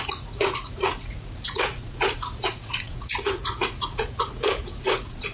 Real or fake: fake